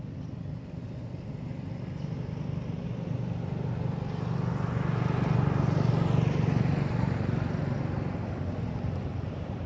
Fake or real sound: real